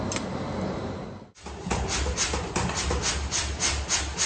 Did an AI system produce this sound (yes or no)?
no